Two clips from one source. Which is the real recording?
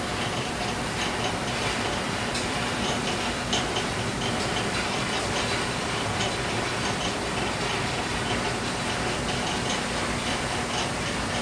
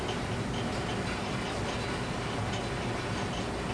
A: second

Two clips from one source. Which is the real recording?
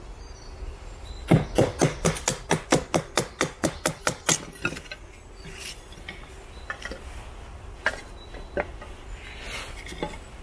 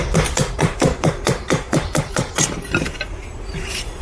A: first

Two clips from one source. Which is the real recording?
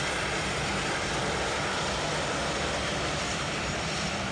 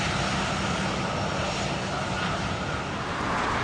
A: second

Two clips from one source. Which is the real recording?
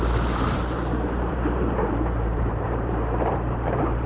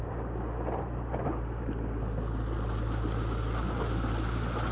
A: second